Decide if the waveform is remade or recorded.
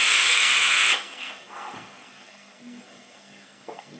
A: remade